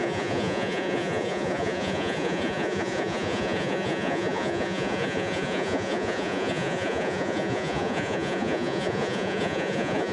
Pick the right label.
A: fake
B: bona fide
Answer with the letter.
A